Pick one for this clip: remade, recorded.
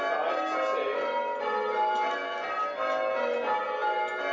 recorded